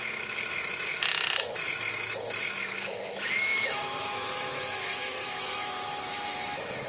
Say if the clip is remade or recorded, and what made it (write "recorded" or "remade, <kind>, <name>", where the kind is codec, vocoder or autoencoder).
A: remade, autoencoder, DAC-VAE